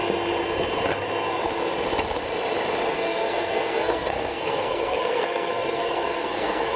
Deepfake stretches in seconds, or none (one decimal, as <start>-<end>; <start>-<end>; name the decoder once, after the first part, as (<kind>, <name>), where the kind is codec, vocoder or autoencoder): 2.9-6.8 (codec, SNAC)